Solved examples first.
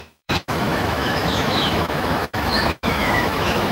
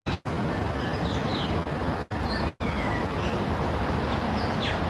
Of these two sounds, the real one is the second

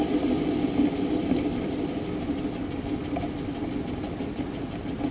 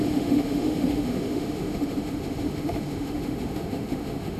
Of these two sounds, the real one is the first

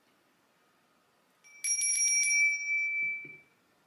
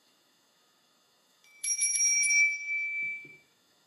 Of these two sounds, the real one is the first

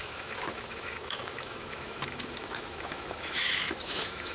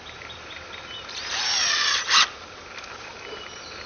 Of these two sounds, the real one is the second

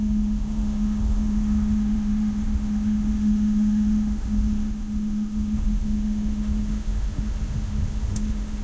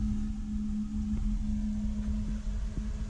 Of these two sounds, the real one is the second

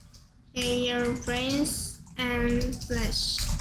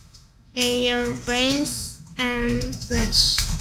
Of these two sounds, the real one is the first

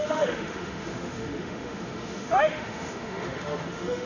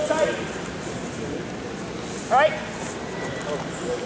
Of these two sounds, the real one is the second